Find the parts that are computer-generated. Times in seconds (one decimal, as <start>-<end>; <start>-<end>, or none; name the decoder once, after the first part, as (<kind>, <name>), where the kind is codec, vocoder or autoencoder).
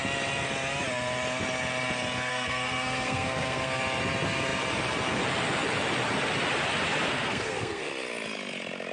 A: 2.3-3.8 (codec, SNAC); 7.1-7.9